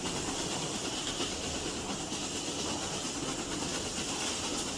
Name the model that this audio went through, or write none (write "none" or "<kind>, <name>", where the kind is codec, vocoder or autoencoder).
none